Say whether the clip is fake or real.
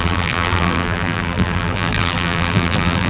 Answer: fake